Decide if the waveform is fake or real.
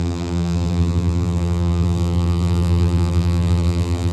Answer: fake